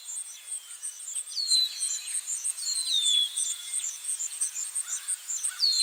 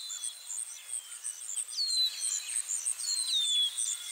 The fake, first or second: first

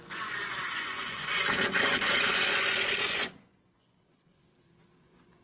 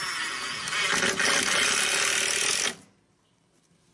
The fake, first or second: first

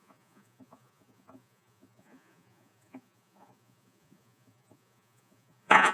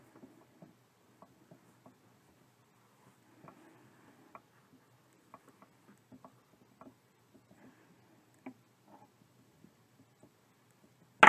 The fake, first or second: first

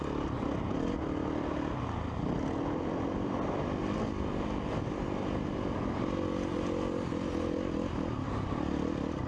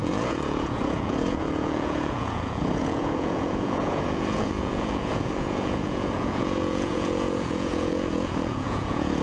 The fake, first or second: second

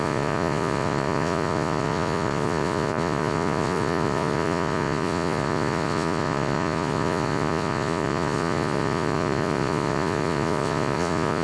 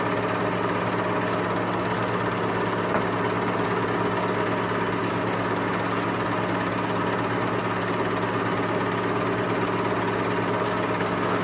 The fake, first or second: first